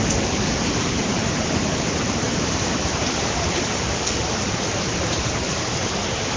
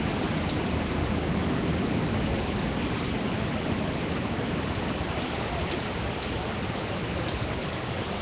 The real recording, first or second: second